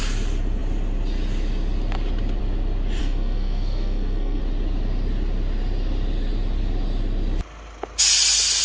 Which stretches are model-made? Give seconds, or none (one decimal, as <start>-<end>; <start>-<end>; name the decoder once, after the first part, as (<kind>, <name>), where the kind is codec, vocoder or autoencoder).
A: 3.0-4.4 (codec, SNAC)